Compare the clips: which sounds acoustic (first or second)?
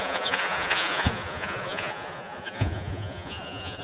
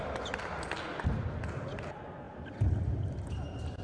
second